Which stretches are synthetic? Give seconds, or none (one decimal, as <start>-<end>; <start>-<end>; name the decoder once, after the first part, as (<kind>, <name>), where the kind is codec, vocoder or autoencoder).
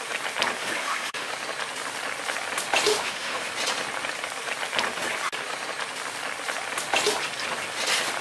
0.6-1.3 (autoencoder, DAC-VAE); 2.9-3.5